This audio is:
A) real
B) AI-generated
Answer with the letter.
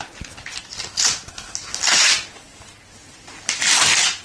A